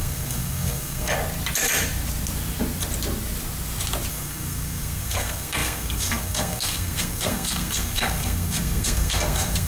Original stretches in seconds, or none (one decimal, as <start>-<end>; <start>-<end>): 1.1-4.1